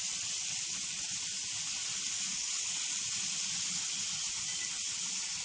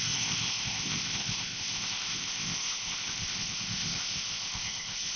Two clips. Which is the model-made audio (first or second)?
second